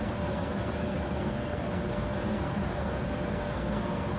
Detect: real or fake fake